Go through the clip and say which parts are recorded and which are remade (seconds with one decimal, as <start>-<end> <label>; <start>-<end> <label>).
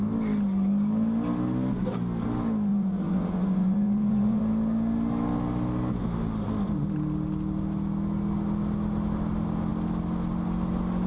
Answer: 0.0-2.7 recorded; 2.7-4.4 remade; 4.4-11.1 recorded